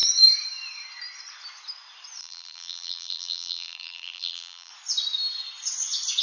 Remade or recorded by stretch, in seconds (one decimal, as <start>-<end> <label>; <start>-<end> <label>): 0.0-2.2 recorded; 2.2-4.7 remade; 4.7-6.2 recorded